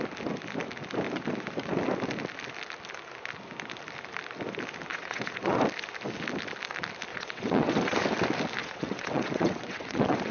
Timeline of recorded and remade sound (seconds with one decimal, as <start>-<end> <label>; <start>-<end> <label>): 0.0-4.9 recorded; 4.9-5.6 remade; 5.6-7.1 recorded; 7.1-8.0 remade; 8.0-8.6 recorded; 8.6-10.3 remade